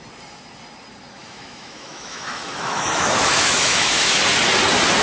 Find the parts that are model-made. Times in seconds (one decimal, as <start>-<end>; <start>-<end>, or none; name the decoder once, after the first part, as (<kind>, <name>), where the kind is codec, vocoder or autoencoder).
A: 1.2-4.2 (autoencoder, DAC-VAE)

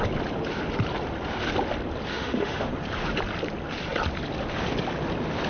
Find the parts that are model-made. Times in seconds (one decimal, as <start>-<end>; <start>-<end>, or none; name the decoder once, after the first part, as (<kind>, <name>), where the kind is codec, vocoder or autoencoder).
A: 2.1-2.7 (autoencoder, DAC-VAE)

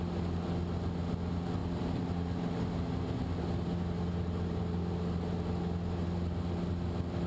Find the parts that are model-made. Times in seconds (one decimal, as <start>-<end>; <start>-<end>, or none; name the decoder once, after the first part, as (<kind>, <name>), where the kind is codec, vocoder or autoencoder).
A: none

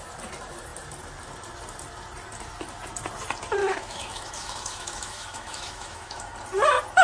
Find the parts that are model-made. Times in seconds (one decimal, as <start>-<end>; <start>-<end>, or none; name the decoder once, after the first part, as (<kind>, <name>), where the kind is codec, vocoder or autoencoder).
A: 3.6-6.2 (autoencoder, DAC-VAE)

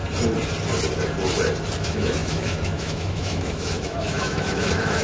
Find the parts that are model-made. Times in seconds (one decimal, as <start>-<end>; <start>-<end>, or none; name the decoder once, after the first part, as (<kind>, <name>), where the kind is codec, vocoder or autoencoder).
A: 1.8-5.0 (autoencoder, DAC-VAE)